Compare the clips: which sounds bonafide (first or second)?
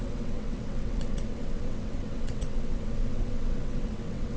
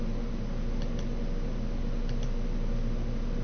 second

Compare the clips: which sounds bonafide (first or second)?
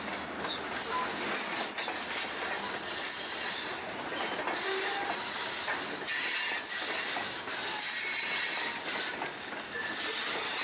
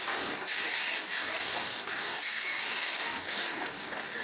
first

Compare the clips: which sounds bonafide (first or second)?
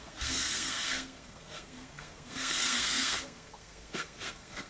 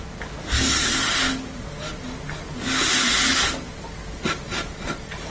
second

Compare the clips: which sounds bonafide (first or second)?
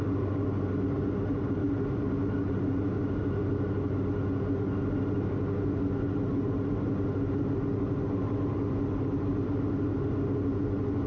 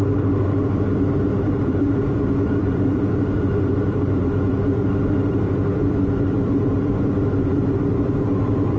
first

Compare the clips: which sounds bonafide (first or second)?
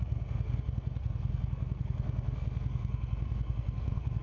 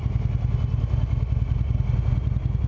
second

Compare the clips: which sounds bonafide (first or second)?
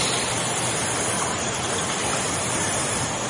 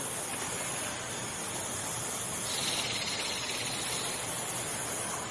second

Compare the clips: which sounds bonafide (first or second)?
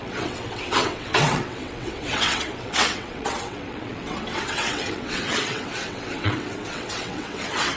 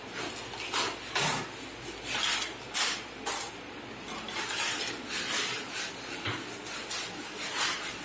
second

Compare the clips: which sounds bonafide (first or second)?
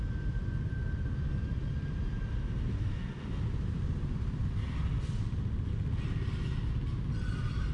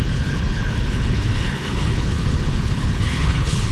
first